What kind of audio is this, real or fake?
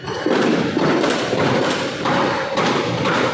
fake